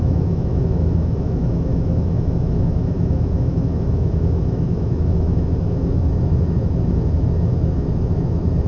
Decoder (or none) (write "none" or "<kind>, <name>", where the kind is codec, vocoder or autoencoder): autoencoder, DAC-VAE